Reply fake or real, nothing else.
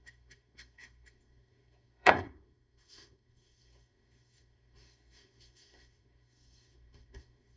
fake